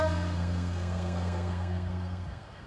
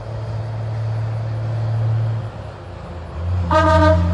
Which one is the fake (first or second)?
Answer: first